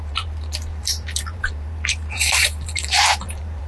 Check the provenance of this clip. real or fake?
fake